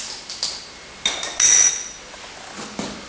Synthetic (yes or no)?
no